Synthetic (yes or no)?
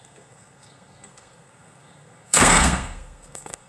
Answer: yes